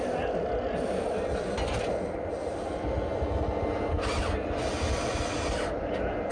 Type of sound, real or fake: real